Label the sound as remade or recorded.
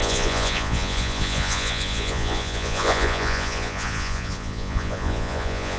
remade